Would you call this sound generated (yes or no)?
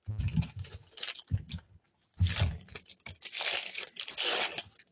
no